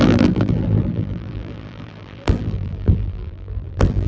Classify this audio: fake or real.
fake